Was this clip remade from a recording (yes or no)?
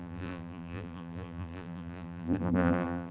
yes